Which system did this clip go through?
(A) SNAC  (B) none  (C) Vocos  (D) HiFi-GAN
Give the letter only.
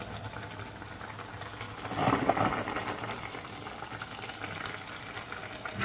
B